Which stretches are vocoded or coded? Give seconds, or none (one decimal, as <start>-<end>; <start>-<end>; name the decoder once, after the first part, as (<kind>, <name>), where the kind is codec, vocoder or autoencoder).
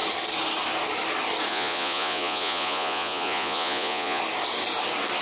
1.5-4.2 (vocoder, Vocos)